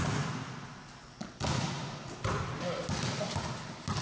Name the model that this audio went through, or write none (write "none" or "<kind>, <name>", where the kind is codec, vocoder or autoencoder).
none